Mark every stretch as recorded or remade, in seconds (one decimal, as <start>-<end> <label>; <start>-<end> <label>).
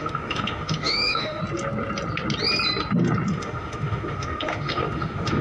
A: 0.0-1.4 remade; 1.4-3.3 recorded; 3.3-5.4 remade